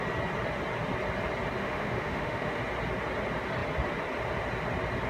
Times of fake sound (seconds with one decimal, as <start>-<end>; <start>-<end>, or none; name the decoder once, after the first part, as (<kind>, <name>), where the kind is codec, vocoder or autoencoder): 1.6-2.6 (autoencoder, DAC-VAE)